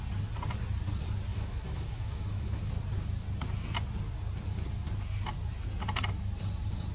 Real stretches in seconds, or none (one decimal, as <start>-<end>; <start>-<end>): 0.0-1.3; 2.6-6.9